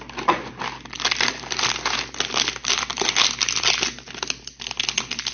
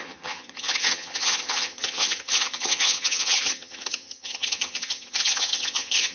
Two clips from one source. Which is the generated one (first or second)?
second